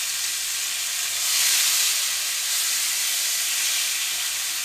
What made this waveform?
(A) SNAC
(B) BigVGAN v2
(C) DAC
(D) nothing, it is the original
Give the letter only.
D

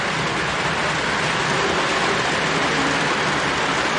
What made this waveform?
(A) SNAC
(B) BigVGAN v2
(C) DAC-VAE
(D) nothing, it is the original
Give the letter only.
D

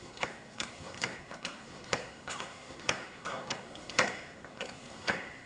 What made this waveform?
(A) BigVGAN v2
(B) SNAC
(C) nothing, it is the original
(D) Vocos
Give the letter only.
B